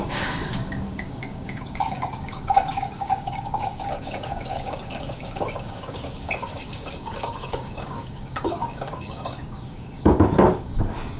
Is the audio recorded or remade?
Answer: remade